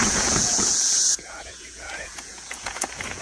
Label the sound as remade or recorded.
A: remade